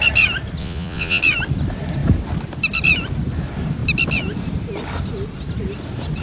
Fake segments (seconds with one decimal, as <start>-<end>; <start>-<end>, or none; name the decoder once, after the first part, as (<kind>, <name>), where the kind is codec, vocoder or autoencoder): 0.6-1.2 (vocoder, Vocos)